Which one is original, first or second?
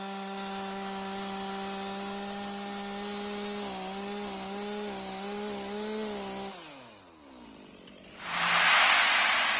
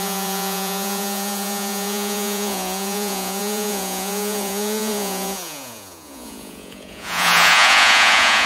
first